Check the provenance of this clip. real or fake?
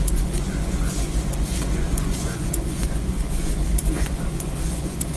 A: fake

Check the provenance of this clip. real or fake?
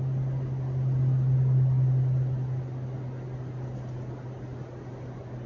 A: real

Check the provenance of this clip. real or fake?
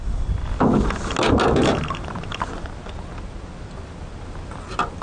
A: real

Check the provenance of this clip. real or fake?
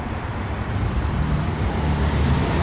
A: real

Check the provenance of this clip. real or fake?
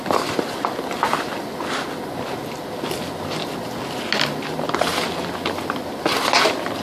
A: real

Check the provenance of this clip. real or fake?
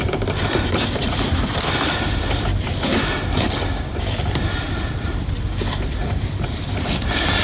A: real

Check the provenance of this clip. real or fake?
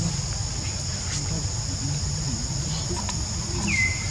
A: real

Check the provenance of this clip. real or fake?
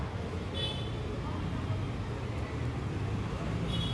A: real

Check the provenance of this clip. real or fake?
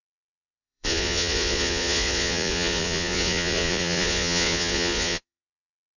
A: fake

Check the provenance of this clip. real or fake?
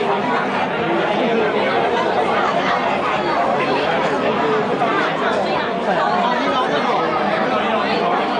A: real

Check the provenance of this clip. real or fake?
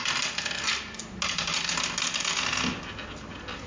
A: real